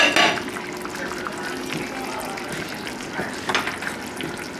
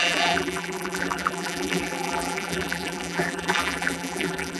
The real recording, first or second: first